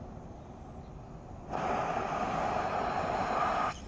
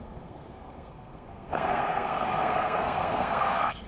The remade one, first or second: second